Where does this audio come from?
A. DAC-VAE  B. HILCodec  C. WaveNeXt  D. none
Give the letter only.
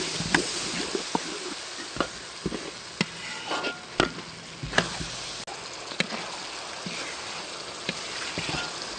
D